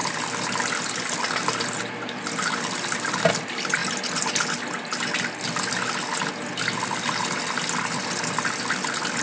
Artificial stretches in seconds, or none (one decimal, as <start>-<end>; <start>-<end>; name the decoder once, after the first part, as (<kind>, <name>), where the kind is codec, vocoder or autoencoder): 0.0-3.8 (vocoder, BigVGAN v2)